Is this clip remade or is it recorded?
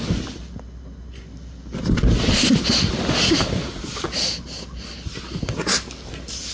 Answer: recorded